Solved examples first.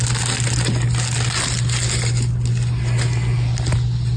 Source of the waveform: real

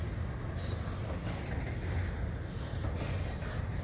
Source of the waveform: real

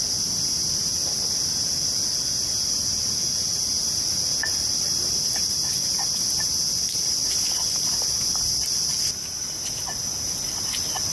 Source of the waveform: real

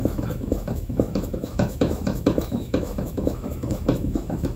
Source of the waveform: fake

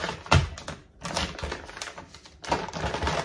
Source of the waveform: real